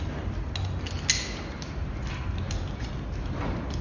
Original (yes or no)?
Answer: yes